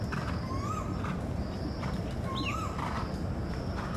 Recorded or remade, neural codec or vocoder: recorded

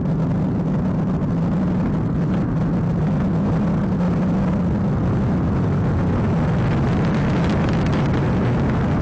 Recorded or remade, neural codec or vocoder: recorded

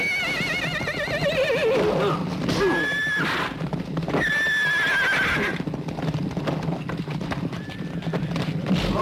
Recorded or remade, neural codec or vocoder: recorded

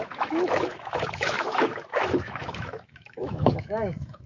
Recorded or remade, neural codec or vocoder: remade, autoencoder, DAC-VAE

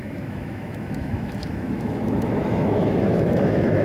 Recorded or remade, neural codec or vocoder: remade, autoencoder, DAC-VAE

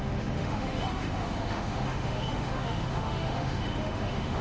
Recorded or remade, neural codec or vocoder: remade, autoencoder, DAC-VAE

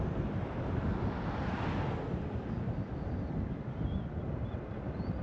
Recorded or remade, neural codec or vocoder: recorded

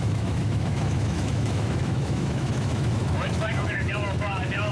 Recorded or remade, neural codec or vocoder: remade, autoencoder, DAC-VAE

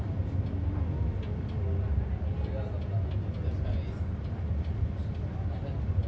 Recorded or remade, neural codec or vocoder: recorded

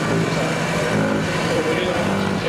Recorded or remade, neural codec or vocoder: recorded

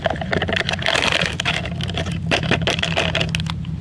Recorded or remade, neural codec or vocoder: recorded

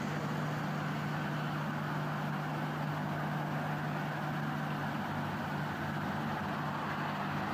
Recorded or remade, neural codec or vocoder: recorded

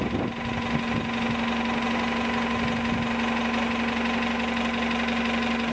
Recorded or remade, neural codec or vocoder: recorded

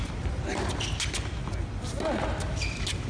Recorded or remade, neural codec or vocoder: recorded